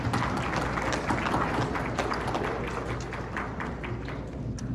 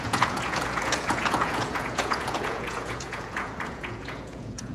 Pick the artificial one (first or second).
second